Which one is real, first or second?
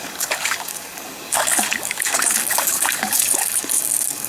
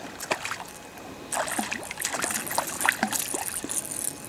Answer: second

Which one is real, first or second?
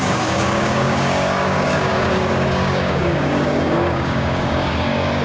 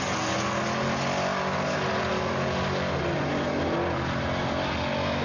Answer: second